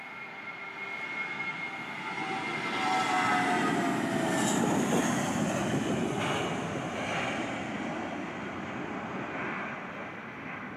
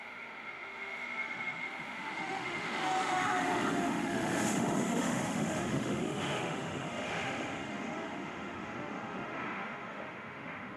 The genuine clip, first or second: first